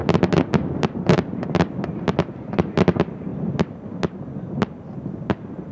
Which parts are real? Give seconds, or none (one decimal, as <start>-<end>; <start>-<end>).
1.5-5.7